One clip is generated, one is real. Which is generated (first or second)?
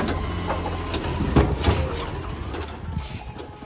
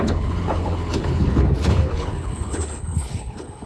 second